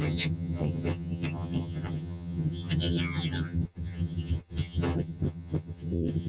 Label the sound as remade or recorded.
remade